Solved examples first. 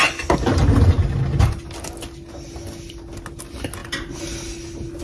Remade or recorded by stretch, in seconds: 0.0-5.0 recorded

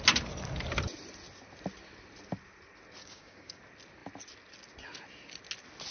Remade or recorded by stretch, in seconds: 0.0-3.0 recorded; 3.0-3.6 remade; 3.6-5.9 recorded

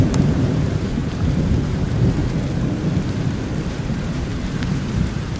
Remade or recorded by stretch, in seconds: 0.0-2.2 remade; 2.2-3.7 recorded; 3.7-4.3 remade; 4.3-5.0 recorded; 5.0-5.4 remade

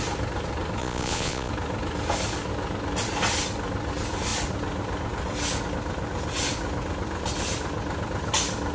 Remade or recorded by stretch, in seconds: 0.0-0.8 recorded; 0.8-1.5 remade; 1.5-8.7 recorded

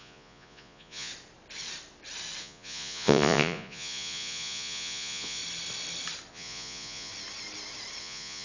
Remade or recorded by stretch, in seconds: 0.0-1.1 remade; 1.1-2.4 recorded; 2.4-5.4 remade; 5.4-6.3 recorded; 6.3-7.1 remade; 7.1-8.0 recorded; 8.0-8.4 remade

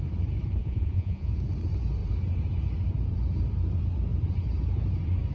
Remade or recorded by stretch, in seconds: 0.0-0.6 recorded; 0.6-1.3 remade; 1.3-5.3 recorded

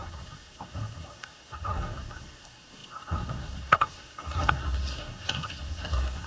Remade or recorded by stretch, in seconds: 0.0-6.3 remade